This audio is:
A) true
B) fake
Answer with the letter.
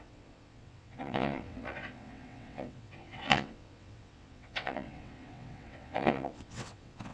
B